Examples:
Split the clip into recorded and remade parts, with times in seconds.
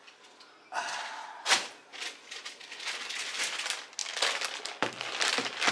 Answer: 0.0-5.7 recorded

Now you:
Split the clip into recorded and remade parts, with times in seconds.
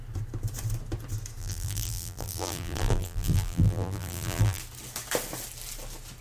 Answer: 0.0-1.4 recorded; 1.4-4.6 remade; 4.6-6.2 recorded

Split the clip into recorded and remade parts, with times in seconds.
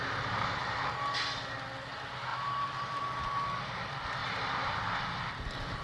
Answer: 0.0-2.3 recorded; 2.3-3.0 remade; 3.0-4.2 recorded; 4.2-5.0 remade; 5.0-5.8 recorded